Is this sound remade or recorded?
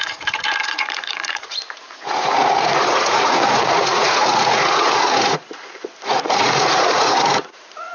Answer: remade